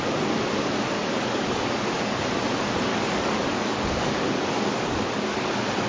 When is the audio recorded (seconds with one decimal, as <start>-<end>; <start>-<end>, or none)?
0.0-1.0; 1.7-2.9; 5.5-5.9